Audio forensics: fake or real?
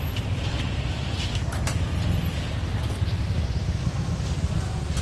real